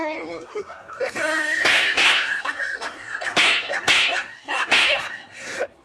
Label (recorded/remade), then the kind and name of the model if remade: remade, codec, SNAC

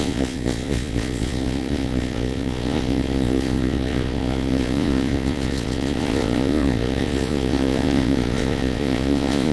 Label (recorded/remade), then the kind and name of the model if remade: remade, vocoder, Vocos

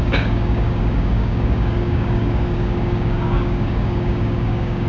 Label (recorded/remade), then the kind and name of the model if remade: remade, codec, DAC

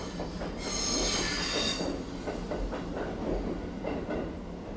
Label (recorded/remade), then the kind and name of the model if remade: recorded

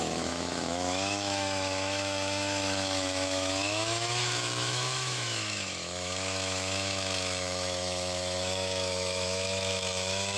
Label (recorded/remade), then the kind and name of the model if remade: remade, autoencoder, DAC-VAE